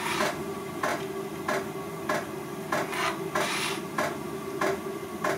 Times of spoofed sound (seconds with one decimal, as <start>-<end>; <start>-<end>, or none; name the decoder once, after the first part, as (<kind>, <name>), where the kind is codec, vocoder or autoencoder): none